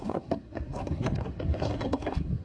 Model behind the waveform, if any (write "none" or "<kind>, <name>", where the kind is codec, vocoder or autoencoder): codec, SNAC